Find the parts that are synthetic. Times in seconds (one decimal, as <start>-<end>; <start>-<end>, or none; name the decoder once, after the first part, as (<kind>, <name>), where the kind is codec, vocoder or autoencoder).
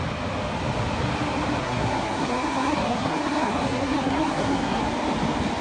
1.6-4.8 (codec, SNAC)